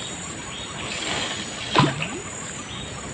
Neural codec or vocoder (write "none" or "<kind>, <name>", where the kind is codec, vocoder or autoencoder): none